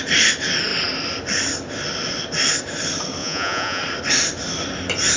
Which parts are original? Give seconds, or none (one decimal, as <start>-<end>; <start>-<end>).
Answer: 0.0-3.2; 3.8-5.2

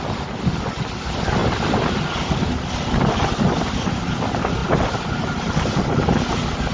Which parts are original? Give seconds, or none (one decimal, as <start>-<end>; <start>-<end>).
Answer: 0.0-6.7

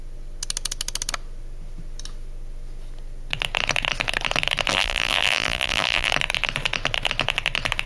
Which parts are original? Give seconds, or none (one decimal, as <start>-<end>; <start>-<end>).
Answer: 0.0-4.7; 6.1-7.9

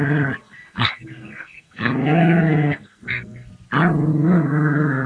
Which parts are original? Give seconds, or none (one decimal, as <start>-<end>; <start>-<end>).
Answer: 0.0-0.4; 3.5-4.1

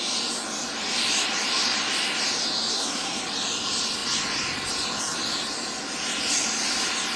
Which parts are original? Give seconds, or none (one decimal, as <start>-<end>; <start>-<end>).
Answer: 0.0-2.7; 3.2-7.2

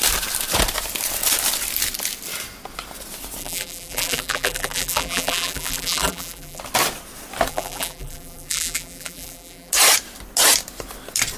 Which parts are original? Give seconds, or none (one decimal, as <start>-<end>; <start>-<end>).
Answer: 0.0-3.4; 6.6-7.5; 9.7-11.4

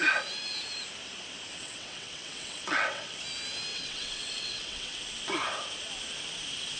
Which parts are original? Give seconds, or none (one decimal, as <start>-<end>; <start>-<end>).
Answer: 0.0-1.5; 3.2-3.7; 5.0-6.8

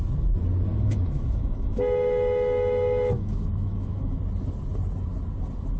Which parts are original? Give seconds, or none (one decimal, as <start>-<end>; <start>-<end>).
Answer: 0.0-0.7; 4.2-5.8